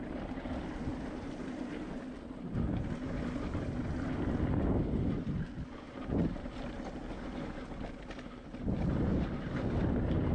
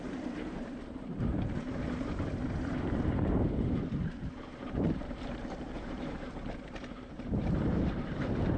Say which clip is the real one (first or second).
first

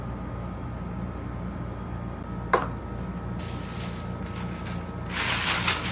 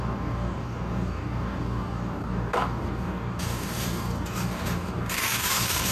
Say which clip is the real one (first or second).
first